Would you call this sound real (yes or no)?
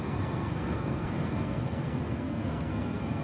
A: no